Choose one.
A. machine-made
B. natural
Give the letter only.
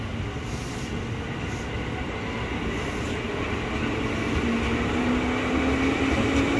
B